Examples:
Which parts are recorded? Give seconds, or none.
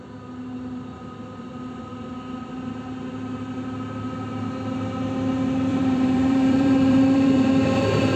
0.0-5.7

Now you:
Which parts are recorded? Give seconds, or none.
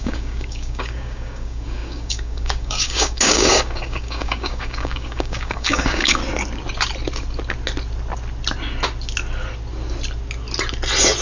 6.2-11.2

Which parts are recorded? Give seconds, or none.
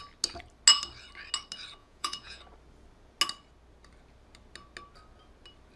0.0-1.8; 2.4-5.8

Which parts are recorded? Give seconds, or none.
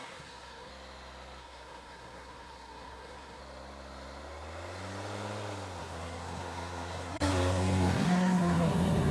0.7-1.4; 3.4-5.8